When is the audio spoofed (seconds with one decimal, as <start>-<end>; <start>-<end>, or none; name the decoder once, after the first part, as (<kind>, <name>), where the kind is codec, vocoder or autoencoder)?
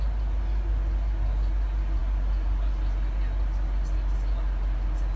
none